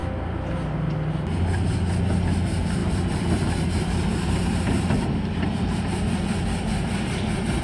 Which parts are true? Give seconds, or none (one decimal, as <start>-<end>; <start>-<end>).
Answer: 0.0-2.8